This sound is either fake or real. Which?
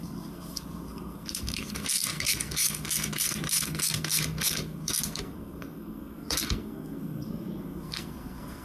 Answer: fake